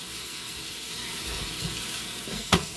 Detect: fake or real fake